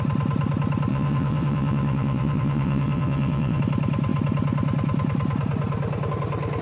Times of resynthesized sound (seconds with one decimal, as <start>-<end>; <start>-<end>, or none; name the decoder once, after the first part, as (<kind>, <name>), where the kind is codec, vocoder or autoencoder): 0.9-3.6 (vocoder, WaveNeXt)